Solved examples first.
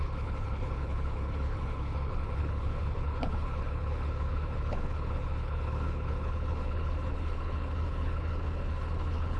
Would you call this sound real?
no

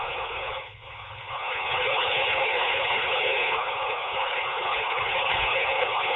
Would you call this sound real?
no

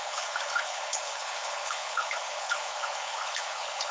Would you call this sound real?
no